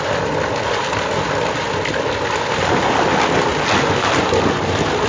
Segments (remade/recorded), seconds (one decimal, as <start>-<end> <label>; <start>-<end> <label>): 0.0-5.1 recorded

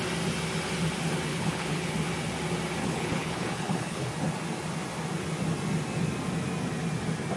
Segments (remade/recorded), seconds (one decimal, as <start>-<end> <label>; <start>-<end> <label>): 0.0-1.3 recorded; 1.3-1.9 remade; 1.9-2.8 recorded; 2.8-4.1 remade; 4.1-7.4 recorded

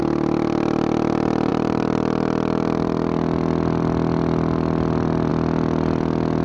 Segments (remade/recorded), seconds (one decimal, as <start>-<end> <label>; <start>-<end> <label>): 0.0-1.5 recorded; 1.5-5.3 remade; 5.3-6.4 recorded

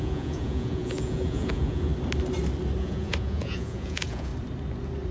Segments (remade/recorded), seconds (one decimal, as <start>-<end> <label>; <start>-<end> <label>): 0.0-1.9 remade; 1.9-2.8 recorded; 2.8-4.3 remade; 4.3-5.1 recorded

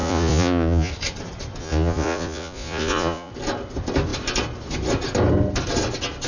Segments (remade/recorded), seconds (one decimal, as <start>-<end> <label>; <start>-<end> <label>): 0.0-0.9 remade; 0.9-1.6 recorded; 1.6-3.3 remade; 3.3-6.3 recorded

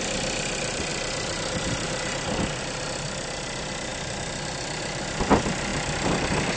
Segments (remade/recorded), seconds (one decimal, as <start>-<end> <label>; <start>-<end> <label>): 0.0-6.6 recorded

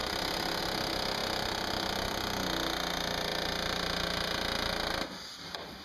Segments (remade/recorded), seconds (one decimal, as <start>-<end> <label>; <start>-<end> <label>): 0.0-5.8 recorded

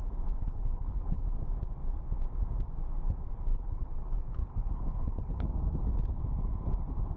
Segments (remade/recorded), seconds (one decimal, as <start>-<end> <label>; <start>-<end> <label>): 0.0-0.4 recorded; 0.4-1.2 remade; 1.2-3.5 recorded; 3.5-5.5 remade; 5.5-7.2 recorded